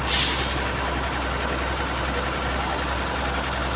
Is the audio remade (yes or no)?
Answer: no